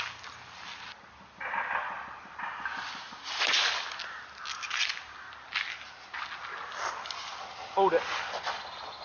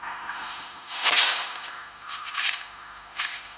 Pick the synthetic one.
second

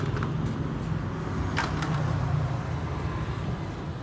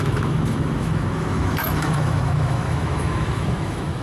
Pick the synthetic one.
second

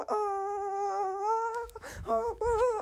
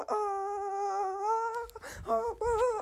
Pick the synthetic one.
first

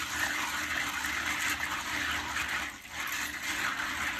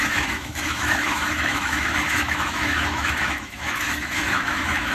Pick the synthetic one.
second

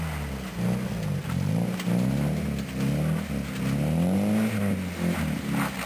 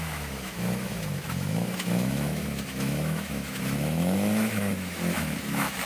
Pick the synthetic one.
second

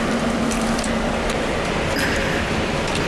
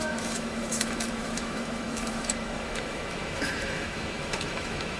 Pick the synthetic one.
second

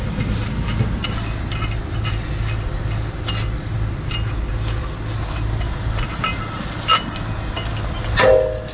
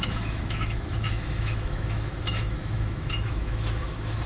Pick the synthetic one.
second